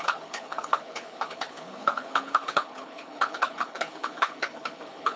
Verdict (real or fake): fake